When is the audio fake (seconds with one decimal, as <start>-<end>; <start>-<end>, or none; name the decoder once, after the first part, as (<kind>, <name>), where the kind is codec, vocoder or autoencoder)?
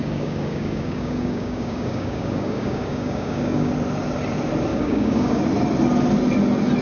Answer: 0.0-3.7 (codec, DAC); 4.7-5.4